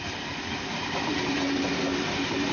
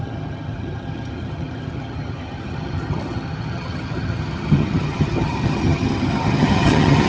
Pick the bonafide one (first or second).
first